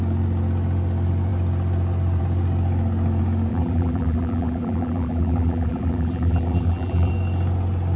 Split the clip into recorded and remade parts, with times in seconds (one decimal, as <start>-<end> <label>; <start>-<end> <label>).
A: 0.0-3.5 recorded; 3.5-7.1 remade; 7.1-8.0 recorded